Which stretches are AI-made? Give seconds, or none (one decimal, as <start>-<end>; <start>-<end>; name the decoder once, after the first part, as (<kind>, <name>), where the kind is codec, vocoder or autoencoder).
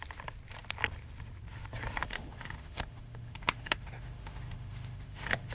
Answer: 2.0-5.5 (autoencoder, DAC-VAE)